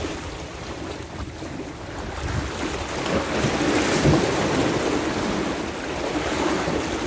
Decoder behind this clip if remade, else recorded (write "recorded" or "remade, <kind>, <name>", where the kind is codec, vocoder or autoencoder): recorded